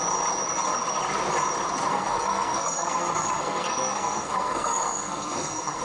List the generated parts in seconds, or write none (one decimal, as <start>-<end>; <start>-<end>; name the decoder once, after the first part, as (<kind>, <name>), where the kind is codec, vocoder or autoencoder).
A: 1.9-5.8 (codec, SNAC)